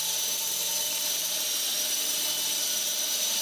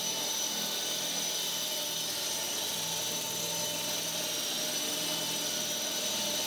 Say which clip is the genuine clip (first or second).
second